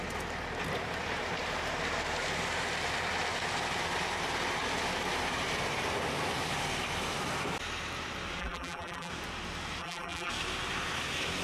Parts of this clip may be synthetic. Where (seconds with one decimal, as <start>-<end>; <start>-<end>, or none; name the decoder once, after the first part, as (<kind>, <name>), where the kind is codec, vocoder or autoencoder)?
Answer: 8.4-9.1 (vocoder, BigVGAN v2); 9.8-10.3